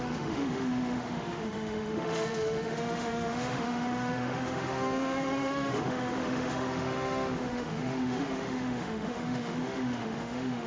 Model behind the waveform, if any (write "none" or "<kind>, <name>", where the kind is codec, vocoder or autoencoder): autoencoder, DAC-VAE